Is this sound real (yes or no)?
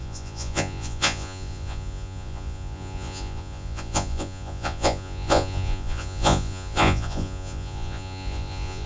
no